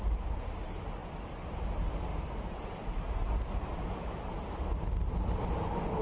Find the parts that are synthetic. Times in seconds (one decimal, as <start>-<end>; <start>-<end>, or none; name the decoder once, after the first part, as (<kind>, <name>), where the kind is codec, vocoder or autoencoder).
2.1-4.6 (vocoder, BigVGAN v2)